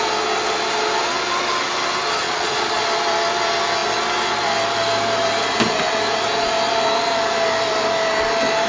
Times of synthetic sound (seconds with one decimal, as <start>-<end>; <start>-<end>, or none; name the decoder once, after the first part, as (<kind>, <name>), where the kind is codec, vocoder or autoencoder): 2.2-2.8 (vocoder, Vocos)